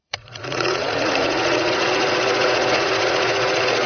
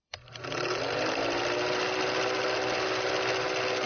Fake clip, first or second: first